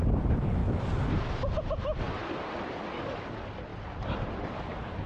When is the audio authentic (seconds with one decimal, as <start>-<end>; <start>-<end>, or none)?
0.0-5.1